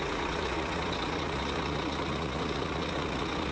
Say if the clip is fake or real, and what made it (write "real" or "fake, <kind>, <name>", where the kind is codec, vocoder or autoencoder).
fake, vocoder, Vocos